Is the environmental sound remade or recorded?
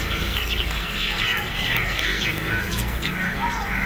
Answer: remade